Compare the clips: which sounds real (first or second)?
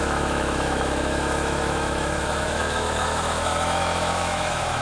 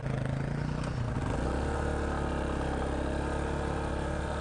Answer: second